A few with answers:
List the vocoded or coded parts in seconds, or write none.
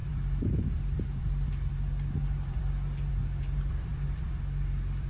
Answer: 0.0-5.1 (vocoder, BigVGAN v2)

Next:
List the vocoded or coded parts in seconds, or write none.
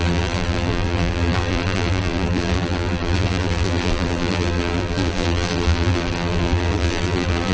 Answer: 0.0-7.5 (vocoder, BigVGAN v2)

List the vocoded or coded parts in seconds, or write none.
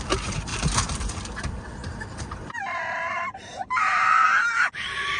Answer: 0.5-1.2 (vocoder, BigVGAN v2); 1.8-4.3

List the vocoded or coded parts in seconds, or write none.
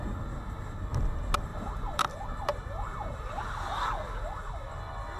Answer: 1.5-2.1 (vocoder, BigVGAN v2); 2.9-3.4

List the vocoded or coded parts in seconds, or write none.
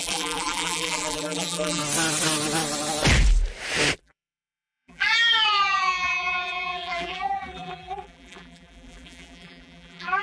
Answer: 0.0-1.8 (vocoder, BigVGAN v2); 4.0-10.2